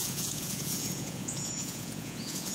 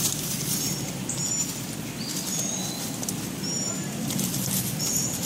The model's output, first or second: first